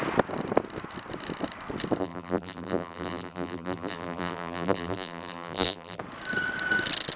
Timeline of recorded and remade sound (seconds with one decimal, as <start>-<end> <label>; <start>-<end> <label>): 0.0-2.0 recorded; 2.0-6.0 remade; 6.0-7.2 recorded